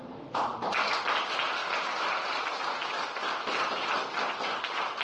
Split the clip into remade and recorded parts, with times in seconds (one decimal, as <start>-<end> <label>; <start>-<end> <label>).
0.0-5.0 recorded